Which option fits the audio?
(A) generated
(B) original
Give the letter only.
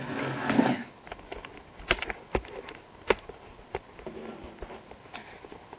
B